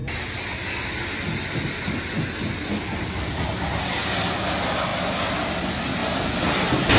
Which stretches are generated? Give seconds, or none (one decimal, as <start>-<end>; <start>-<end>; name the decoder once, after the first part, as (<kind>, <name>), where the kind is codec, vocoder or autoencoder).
none